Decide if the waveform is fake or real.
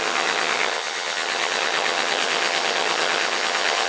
fake